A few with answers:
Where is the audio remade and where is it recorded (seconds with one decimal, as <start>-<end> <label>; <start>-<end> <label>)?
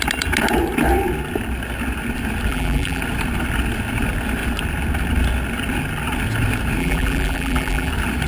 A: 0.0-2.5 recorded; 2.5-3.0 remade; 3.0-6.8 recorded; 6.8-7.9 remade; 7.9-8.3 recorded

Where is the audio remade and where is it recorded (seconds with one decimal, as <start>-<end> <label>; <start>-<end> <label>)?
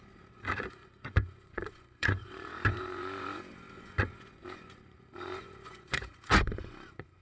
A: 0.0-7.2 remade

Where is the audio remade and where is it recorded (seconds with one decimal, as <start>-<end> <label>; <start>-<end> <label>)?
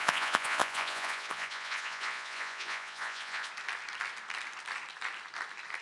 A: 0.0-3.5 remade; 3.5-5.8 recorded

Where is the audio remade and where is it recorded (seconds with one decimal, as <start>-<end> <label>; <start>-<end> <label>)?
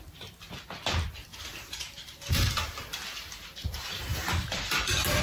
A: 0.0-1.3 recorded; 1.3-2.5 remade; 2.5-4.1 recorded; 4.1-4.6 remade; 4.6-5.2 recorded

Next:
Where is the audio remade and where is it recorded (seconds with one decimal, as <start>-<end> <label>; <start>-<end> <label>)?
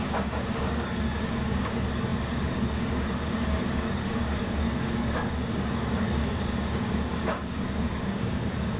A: 0.0-8.8 remade